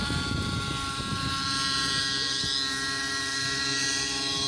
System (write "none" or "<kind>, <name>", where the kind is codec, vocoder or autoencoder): none